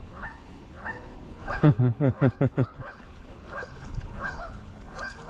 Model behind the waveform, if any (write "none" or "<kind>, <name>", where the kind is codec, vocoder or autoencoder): codec, HILCodec